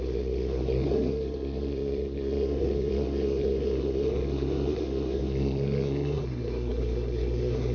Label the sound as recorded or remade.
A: remade